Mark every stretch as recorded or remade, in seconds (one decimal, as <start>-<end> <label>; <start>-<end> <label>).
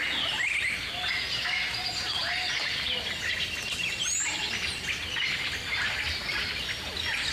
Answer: 0.0-7.3 recorded